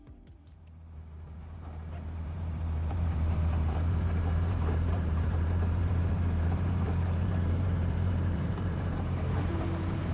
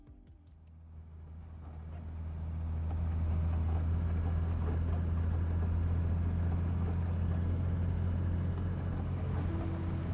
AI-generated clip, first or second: first